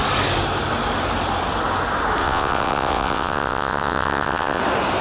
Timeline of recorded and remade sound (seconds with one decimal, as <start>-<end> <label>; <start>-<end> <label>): 0.0-2.2 recorded; 2.2-4.6 remade; 4.6-5.0 recorded